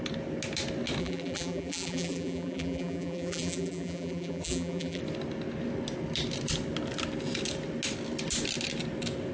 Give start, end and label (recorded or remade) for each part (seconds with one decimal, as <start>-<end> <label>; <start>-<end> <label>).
0.0-1.0 recorded; 1.0-5.0 remade; 5.0-9.3 recorded